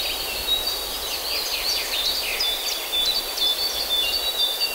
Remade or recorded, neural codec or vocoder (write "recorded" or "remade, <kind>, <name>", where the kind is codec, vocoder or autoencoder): recorded